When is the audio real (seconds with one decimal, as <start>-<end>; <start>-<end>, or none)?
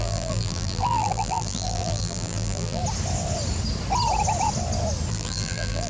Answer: 2.8-5.1